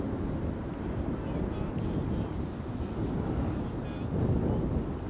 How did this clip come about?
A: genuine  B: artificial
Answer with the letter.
A